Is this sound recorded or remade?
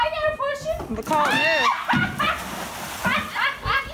recorded